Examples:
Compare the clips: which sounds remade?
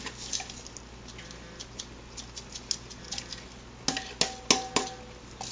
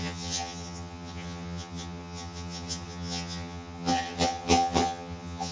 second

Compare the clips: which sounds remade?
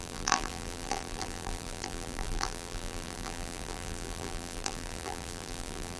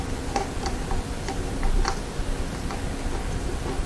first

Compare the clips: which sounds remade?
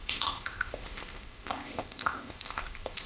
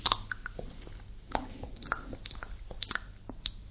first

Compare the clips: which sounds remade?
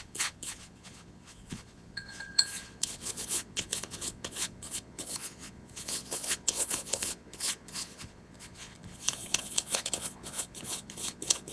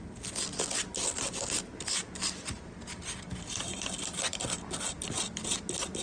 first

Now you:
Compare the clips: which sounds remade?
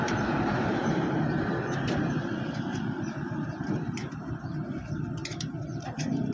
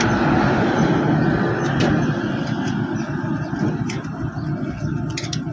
first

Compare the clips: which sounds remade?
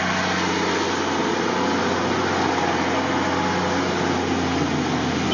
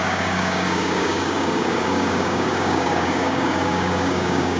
second